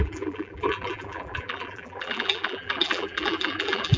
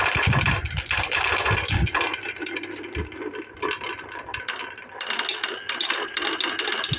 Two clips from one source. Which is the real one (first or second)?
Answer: second